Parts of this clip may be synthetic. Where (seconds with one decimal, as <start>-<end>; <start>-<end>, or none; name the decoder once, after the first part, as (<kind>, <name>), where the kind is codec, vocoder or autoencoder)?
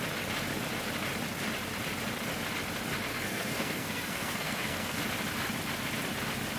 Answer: 3.1-5.0 (codec, SNAC)